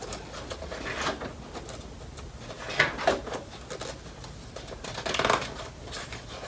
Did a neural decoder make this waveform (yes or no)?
no